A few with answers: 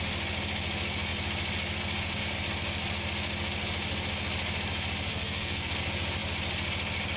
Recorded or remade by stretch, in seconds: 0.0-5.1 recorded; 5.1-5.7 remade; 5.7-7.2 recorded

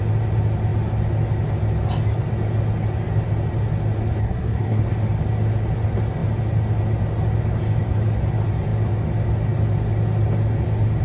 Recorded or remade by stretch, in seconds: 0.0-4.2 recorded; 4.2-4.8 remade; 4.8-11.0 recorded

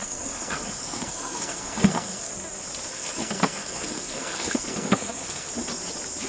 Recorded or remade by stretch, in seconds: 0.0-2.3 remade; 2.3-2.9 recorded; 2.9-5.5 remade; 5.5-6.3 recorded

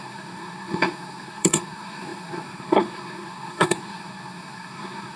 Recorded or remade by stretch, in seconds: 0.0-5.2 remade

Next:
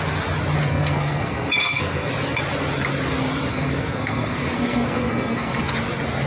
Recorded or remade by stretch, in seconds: 0.0-0.7 recorded; 0.7-2.1 remade; 2.1-3.5 recorded; 3.5-5.6 remade; 5.6-6.3 recorded

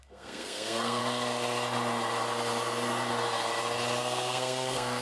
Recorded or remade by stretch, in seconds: 0.0-1.0 remade; 1.0-4.0 recorded; 4.0-5.0 remade

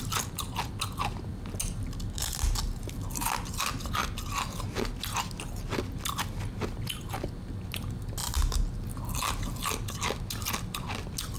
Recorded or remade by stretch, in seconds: 0.0-11.4 recorded

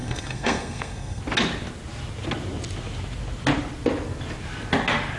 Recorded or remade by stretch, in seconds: 0.0-1.2 remade; 1.2-5.2 recorded